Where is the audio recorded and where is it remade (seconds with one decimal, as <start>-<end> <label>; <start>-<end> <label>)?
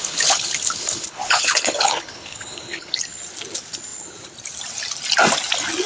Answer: 0.0-3.0 remade; 3.0-5.9 recorded